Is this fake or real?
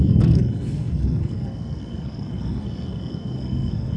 fake